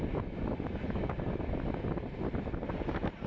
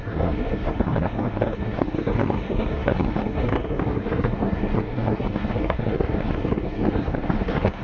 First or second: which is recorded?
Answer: first